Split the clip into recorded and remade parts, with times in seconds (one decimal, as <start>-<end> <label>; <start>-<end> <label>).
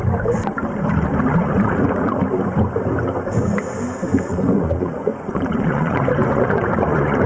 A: 0.0-1.3 recorded; 1.3-2.2 remade; 2.2-4.1 recorded; 4.1-7.3 remade